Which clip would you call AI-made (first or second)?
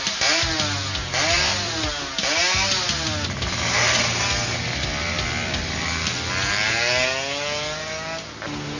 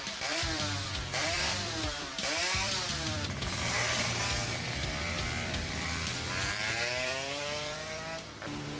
second